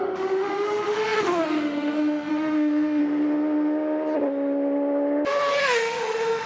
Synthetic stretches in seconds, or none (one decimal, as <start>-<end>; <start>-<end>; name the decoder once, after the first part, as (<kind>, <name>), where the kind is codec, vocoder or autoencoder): 0.0-3.0 (autoencoder, DAC-VAE); 5.6-6.5